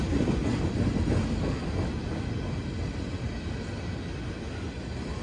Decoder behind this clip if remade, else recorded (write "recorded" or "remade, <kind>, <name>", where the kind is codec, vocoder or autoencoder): recorded